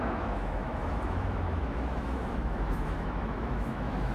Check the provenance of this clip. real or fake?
fake